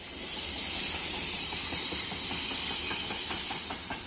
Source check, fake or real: fake